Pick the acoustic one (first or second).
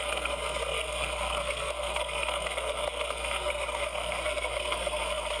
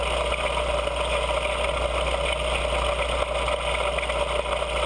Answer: second